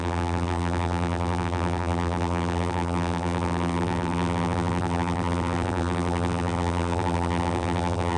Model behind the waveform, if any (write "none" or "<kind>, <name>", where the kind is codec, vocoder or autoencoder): vocoder, BigVGAN v2